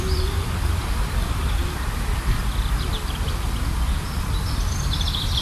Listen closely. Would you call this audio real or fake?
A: fake